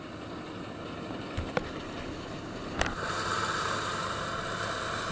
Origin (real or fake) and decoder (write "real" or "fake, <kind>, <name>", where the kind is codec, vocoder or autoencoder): real